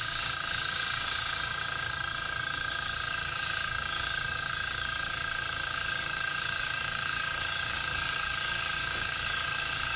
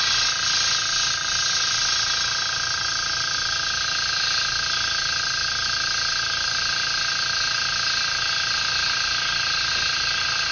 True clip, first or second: second